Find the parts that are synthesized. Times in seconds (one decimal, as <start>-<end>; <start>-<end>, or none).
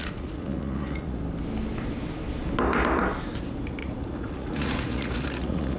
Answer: 0.0-1.2; 3.8-5.8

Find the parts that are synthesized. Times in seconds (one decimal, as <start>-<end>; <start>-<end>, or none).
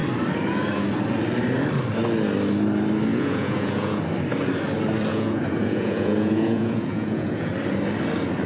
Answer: 3.1-4.0; 5.1-7.5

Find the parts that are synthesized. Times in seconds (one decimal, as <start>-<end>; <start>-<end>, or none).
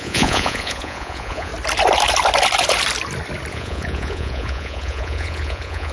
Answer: 0.0-1.5; 3.5-5.9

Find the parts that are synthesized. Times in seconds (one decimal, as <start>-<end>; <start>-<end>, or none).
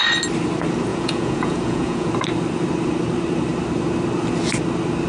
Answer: 0.9-2.1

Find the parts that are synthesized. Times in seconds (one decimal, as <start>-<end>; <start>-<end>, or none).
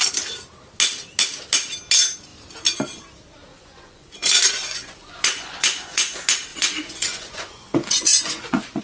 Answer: 3.5-6.1; 6.5-8.8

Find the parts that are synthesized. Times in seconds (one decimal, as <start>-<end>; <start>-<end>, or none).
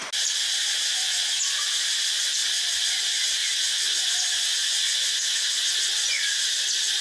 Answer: 0.6-1.7; 3.4-6.4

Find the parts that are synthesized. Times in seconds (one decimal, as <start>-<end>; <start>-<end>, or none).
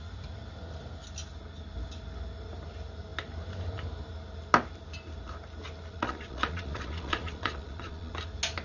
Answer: 5.9-8.1